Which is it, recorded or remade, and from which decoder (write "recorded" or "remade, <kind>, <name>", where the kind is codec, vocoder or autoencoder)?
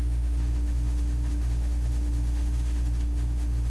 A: remade, autoencoder, DAC-VAE